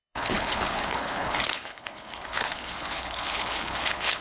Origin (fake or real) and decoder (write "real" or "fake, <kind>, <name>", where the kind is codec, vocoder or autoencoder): fake, codec, HILCodec